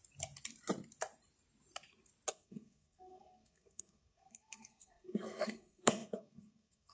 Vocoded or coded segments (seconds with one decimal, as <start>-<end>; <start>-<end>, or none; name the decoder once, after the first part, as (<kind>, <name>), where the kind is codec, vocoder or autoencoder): 2.3-6.9 (codec, SNAC)